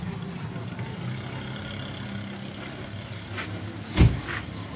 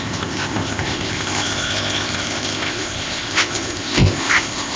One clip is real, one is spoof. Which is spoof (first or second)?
second